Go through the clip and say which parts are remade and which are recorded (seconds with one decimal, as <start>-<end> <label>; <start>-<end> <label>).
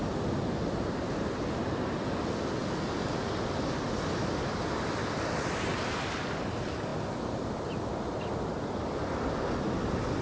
0.0-10.2 recorded